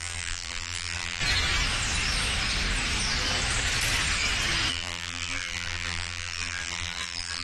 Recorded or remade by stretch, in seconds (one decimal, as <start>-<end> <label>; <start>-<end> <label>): 0.0-1.2 remade; 1.2-4.7 recorded; 4.7-7.4 remade